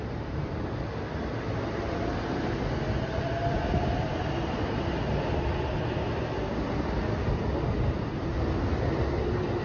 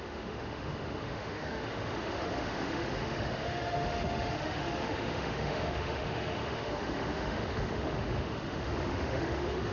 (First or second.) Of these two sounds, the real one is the first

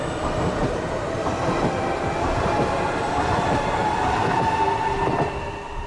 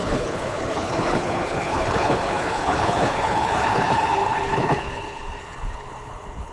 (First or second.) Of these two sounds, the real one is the first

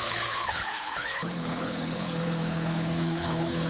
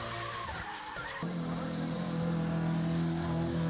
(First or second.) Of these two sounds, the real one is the second